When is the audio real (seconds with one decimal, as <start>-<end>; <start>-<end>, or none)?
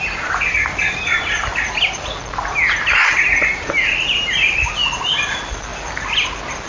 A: 0.0-6.7